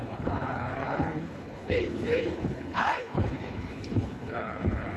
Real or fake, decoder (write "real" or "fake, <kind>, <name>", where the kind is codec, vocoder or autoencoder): fake, codec, HILCodec